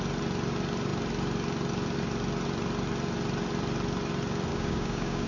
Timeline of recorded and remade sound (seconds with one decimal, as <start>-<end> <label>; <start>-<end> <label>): 0.0-4.5 recorded; 4.5-5.3 remade